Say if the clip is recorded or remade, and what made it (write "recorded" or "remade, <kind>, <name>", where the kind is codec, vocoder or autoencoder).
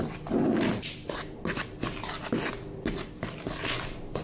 recorded